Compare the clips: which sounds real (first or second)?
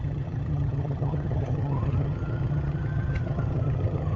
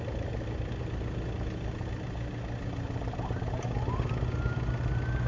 second